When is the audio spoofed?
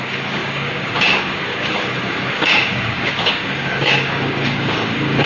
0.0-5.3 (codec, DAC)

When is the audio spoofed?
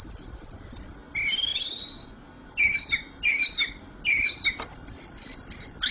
none